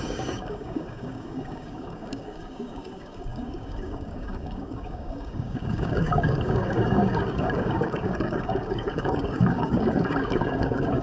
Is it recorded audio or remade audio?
remade